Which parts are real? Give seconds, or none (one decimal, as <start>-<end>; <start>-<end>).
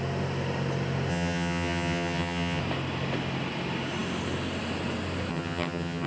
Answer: 0.0-1.1; 2.6-5.3